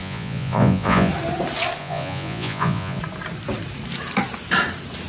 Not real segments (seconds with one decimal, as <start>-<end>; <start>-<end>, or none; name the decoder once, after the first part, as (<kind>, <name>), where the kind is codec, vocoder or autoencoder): 0.0-1.1 (vocoder, Vocos); 1.8-3.0